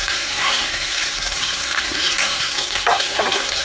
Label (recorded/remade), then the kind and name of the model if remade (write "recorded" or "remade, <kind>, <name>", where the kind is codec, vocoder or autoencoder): remade, codec, SNAC